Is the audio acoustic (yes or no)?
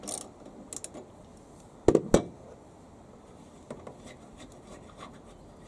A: yes